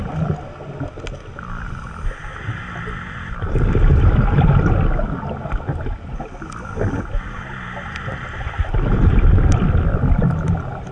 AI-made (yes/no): no